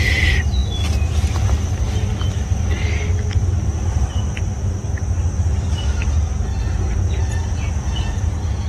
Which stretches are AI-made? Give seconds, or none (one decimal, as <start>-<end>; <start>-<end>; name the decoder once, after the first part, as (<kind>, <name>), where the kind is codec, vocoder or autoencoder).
6.5-8.2 (vocoder, Vocos)